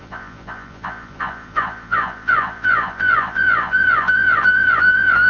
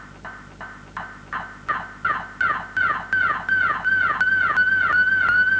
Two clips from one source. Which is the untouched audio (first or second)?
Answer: second